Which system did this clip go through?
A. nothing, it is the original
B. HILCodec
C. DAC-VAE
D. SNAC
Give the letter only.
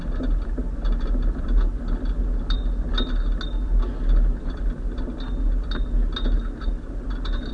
A